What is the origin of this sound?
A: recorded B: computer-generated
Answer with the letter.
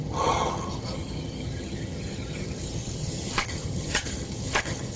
B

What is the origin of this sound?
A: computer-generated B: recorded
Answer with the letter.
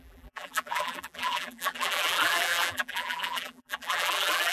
A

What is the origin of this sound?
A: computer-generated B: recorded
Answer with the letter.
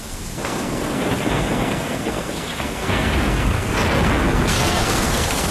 A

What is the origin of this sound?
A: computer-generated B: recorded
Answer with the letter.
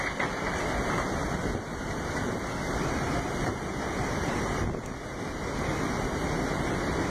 B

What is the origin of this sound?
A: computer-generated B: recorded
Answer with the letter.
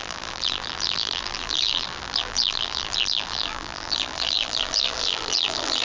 A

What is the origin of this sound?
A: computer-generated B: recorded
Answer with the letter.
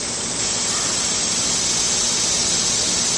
B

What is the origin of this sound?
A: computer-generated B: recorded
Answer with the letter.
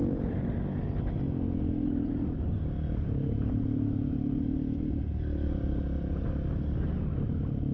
B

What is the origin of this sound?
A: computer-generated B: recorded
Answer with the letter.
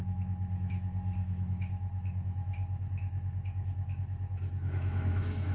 A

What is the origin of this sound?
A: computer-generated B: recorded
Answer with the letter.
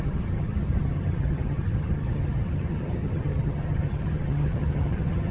A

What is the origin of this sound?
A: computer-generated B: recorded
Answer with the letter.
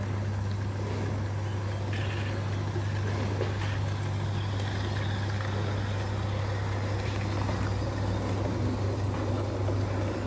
B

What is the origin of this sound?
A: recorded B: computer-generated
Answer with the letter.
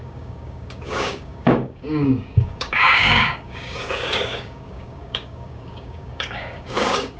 B